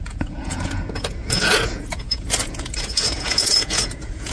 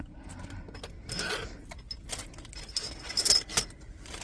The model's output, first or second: first